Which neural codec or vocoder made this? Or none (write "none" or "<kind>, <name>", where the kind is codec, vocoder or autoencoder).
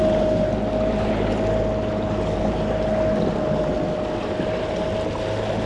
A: none